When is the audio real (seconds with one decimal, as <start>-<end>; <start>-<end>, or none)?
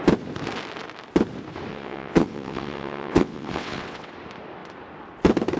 0.0-1.7; 4.1-5.6